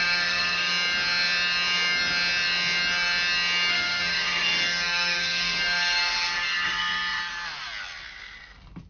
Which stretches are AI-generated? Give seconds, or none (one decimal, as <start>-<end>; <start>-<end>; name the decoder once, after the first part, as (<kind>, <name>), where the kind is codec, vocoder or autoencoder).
0.0-0.7 (codec, SNAC); 3.7-7.2